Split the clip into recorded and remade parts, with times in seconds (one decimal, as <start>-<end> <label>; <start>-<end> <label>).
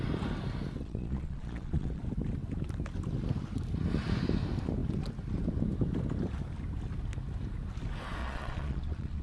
0.0-0.8 recorded; 0.8-2.0 remade; 2.0-8.2 recorded; 8.2-9.2 remade